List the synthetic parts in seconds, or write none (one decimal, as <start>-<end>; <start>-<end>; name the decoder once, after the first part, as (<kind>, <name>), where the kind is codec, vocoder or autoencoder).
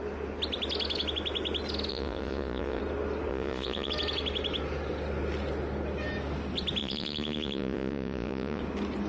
1.9-2.8 (vocoder, Vocos); 3.3-3.9; 6.8-8.6